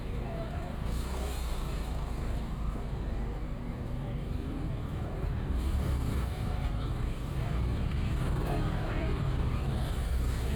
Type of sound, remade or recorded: remade